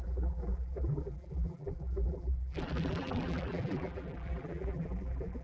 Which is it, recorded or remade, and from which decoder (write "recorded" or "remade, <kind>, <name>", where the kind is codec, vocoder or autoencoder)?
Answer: remade, vocoder, BigVGAN v2